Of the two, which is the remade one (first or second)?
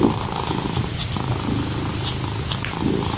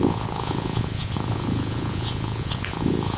second